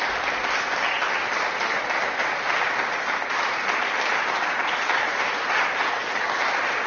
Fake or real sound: real